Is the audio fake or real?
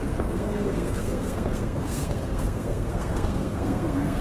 fake